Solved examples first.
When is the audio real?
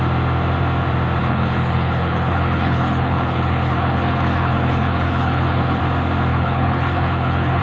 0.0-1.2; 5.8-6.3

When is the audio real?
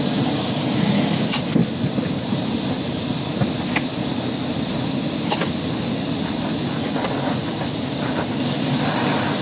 0.0-9.4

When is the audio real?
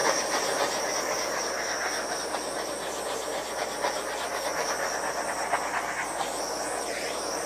0.0-7.5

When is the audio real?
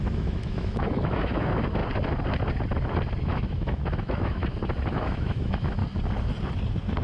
1.8-3.2; 4.4-4.9; 5.8-7.0